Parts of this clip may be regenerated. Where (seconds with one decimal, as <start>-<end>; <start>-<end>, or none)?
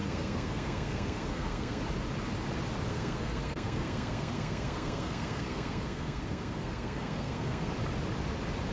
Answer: 0.0-1.8; 2.9-7.7